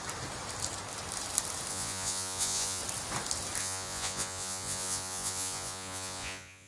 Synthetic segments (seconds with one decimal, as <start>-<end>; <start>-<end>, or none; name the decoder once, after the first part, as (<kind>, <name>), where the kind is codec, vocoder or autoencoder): 1.7-2.8 (vocoder, Vocos); 3.6-6.7